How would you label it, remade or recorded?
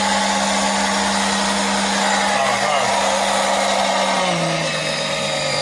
recorded